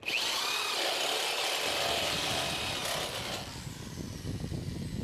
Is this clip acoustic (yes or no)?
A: yes